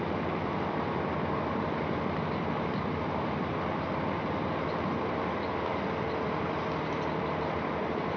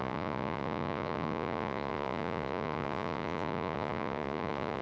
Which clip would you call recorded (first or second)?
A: first